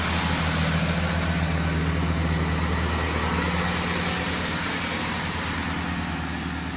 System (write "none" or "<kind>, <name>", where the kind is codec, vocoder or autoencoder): none